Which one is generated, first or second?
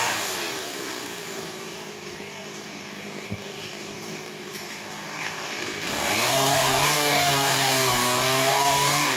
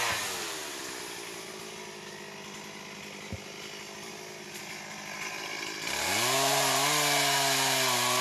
first